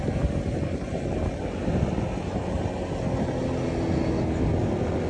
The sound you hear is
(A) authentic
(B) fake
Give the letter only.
A